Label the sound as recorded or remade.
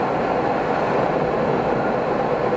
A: recorded